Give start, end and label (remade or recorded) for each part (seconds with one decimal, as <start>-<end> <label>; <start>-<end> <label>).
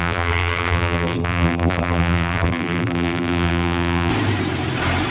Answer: 0.0-4.1 remade; 4.1-5.1 recorded